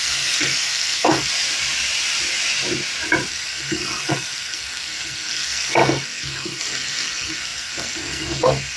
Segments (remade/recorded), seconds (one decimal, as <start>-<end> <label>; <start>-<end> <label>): 0.0-1.3 remade; 1.3-3.3 recorded; 3.3-8.8 remade